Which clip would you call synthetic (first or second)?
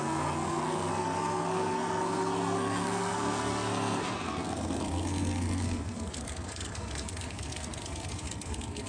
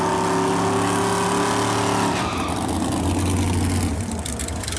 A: first